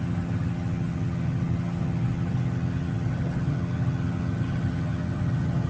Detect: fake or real fake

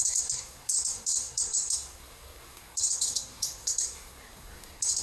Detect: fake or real fake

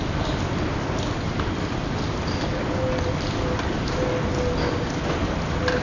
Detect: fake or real real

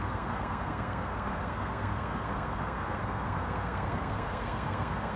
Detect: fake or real fake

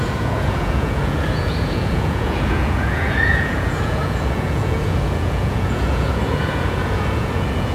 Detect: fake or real fake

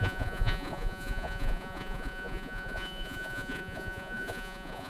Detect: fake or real fake